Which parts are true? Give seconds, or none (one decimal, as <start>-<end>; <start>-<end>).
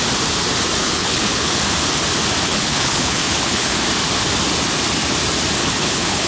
0.0-0.8; 1.6-2.5; 3.7-5.6